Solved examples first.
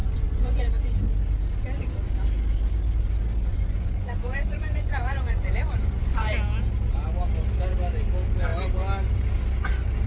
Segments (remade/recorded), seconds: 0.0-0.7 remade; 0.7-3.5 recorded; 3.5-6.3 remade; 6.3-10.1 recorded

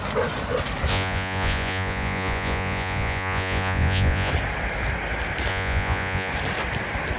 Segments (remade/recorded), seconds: 0.0-0.9 recorded; 0.9-4.3 remade; 4.3-5.5 recorded; 5.5-6.3 remade; 6.3-7.2 recorded

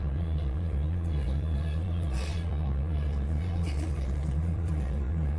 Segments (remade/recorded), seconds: 0.0-5.4 remade

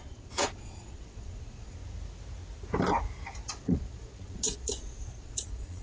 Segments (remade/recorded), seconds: 0.0-1.8 remade; 1.8-3.5 recorded; 3.5-5.8 remade

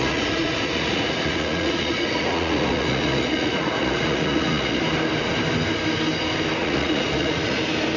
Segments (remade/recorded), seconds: 0.0-4.8 remade; 4.8-6.6 recorded; 6.6-7.6 remade; 7.6-8.0 recorded

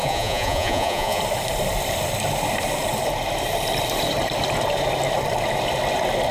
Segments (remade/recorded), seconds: 0.0-1.2 remade; 1.2-6.3 recorded

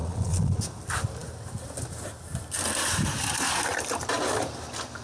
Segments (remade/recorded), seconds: 0.0-0.6 remade; 0.6-5.0 recorded